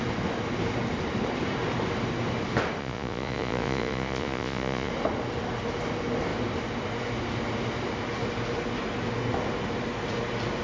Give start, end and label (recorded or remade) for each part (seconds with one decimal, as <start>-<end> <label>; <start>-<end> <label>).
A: 0.0-2.8 recorded; 2.8-4.9 remade; 4.9-10.6 recorded